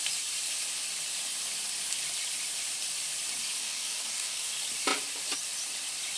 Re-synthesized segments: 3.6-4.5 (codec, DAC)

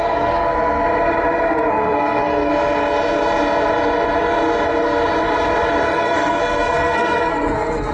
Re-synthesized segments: 0.0-0.8 (codec, SNAC); 1.7-2.5; 5.8-7.9

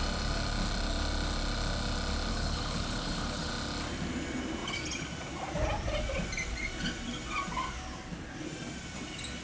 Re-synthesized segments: 2.3-3.5 (codec, HILCodec)